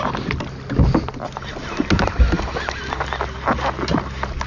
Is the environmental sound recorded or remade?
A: recorded